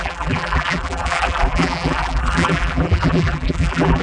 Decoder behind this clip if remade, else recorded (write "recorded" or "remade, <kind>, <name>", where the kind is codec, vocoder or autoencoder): remade, vocoder, BigVGAN v2